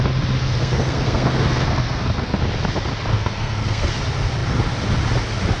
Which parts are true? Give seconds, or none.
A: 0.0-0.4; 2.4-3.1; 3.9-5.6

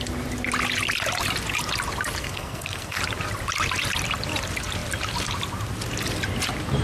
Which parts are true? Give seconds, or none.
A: 0.0-2.2; 3.0-6.8

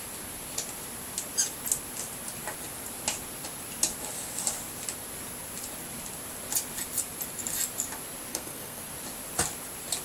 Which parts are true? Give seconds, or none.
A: 0.0-8.3; 8.8-10.0

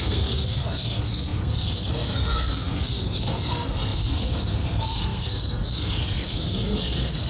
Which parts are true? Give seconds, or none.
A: none

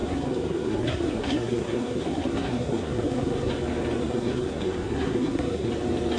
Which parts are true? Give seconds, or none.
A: 3.5-4.0; 5.7-6.2

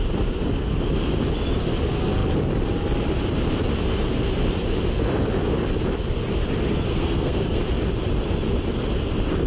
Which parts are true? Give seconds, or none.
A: 0.0-6.9; 7.6-9.5

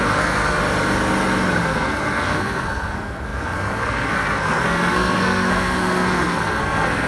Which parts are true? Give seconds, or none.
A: 0.6-1.6

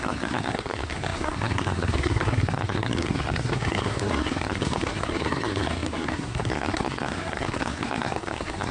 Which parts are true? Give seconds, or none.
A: none